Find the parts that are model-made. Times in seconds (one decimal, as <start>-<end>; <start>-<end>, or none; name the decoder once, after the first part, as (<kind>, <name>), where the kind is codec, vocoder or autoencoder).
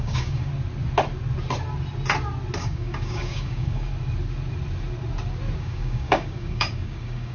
0.0-0.5 (codec, DAC); 2.6-3.9; 5.6-7.3